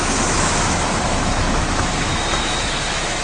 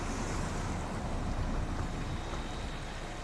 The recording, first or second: second